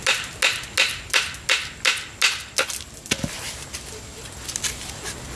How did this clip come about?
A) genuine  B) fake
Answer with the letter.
A